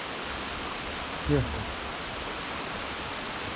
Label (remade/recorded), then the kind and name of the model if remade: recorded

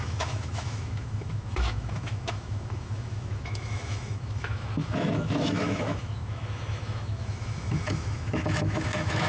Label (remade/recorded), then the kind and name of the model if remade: remade, autoencoder, DAC-VAE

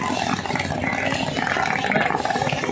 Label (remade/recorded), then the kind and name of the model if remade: recorded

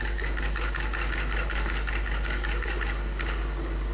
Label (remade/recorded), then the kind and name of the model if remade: remade, codec, DAC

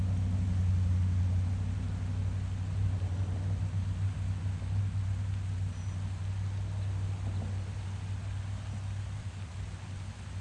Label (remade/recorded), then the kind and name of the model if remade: recorded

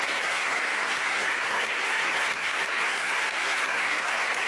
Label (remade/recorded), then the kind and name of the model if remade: remade, codec, SNAC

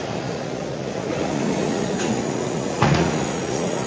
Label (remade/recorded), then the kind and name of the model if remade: remade, vocoder, Vocos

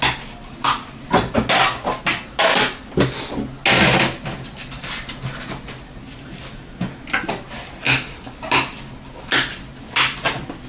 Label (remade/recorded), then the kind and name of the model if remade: recorded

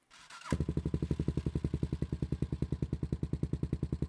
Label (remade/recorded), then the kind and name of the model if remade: recorded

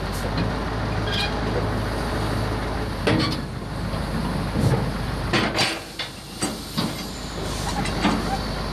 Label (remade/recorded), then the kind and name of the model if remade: recorded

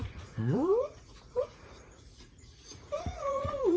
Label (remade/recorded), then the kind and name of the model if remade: remade, vocoder, Vocos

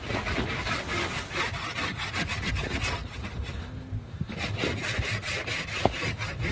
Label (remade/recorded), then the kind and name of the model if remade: recorded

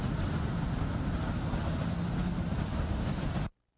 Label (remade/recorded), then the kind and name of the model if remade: recorded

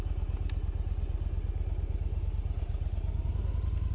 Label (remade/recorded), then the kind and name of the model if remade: recorded